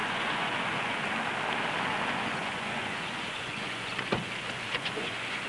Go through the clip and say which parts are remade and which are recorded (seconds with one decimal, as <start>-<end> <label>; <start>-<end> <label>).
0.0-1.0 remade; 1.0-1.9 recorded; 1.9-5.5 remade